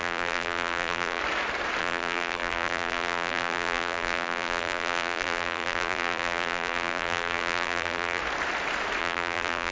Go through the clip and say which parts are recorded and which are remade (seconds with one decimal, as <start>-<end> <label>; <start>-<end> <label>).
0.0-1.2 remade; 1.2-1.8 recorded; 1.8-8.2 remade; 8.2-9.0 recorded; 9.0-9.7 remade